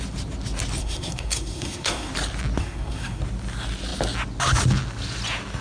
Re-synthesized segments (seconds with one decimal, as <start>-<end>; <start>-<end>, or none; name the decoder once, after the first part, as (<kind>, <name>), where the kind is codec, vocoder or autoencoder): 0.8-2.1 (codec, SNAC); 2.6-3.2